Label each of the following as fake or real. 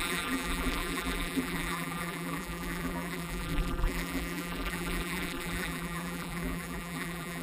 fake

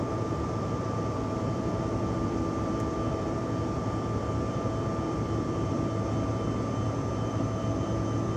fake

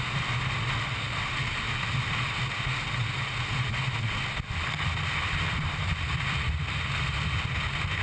real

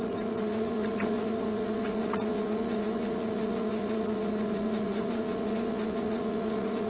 fake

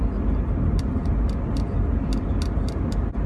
real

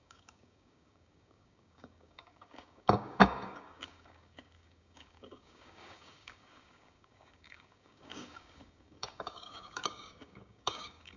fake